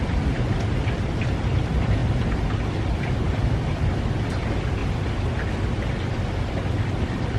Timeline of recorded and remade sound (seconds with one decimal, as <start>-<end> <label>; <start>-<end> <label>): 0.0-4.8 remade; 4.8-6.8 recorded; 6.8-7.4 remade

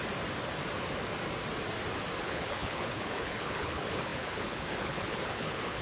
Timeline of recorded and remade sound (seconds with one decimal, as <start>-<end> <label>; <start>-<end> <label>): 0.0-2.2 recorded; 2.2-5.8 remade